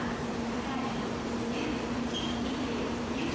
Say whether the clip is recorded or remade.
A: remade